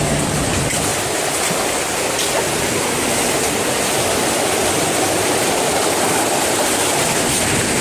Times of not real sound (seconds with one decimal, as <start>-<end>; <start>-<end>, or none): none